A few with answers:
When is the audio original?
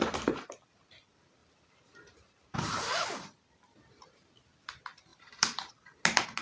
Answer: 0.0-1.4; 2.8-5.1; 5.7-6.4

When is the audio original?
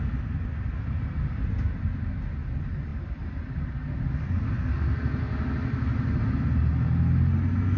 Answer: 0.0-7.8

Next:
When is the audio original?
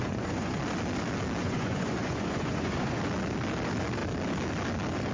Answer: 0.6-1.4; 3.0-5.1